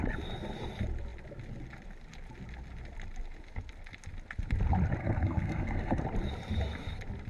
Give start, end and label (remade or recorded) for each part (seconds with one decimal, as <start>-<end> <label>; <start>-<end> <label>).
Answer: 0.0-5.0 recorded; 5.0-6.0 remade; 6.0-7.3 recorded